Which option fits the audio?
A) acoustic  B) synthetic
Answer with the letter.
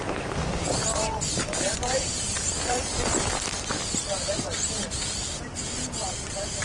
B